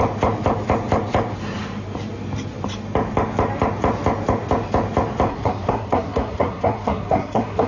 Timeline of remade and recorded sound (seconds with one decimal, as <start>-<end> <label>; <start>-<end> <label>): 0.0-5.3 recorded; 5.3-7.7 remade